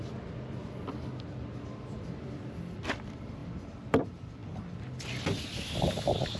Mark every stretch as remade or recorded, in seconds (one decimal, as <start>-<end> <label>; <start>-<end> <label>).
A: 0.0-0.6 remade; 0.6-1.3 recorded; 1.3-3.4 remade; 3.4-4.0 recorded; 4.0-4.4 remade; 4.4-6.4 recorded

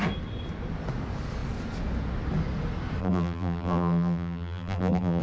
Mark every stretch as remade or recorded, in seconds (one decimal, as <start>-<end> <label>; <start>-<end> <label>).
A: 0.0-3.0 recorded; 3.0-5.2 remade

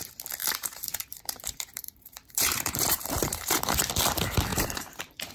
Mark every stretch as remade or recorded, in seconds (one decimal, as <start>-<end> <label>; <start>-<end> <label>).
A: 0.0-0.4 recorded; 0.4-3.6 remade; 3.6-4.5 recorded; 4.5-5.3 remade

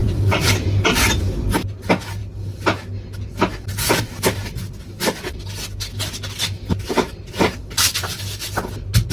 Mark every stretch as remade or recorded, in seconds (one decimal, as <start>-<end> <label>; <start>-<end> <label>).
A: 0.0-0.5 remade; 0.5-7.6 recorded; 7.6-8.1 remade; 8.1-9.1 recorded